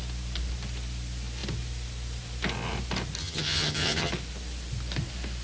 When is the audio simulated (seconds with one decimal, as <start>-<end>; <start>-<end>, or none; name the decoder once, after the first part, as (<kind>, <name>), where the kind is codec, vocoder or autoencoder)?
3.2-4.1 (vocoder, HiFi-GAN)